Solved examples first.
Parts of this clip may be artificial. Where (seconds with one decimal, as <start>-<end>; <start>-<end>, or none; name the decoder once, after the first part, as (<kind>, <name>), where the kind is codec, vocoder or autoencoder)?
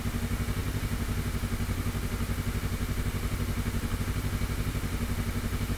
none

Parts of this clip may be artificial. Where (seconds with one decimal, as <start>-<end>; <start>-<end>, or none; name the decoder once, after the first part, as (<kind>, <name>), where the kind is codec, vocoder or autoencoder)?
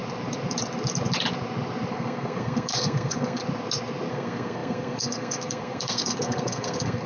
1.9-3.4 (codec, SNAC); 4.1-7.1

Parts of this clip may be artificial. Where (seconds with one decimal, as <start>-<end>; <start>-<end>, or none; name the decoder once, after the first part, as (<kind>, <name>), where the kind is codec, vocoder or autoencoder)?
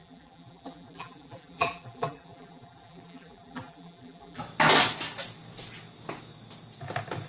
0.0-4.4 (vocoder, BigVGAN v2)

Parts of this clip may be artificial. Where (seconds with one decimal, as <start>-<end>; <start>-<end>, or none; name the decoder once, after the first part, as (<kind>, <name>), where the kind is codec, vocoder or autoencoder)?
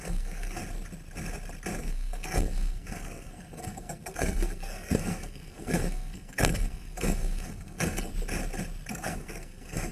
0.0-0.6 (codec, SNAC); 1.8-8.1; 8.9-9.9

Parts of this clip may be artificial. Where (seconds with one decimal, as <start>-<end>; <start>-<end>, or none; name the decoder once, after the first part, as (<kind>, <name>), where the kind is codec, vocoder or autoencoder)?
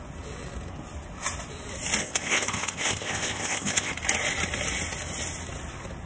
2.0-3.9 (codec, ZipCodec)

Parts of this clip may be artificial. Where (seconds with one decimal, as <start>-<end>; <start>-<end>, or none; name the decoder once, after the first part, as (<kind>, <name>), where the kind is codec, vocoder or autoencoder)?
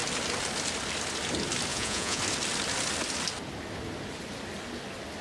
1.7-2.2 (vocoder, Vocos)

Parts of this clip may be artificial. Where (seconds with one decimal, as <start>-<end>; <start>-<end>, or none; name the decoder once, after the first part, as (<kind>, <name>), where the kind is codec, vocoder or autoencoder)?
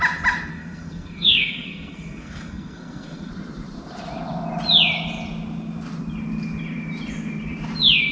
0.5-3.3 (codec, SNAC)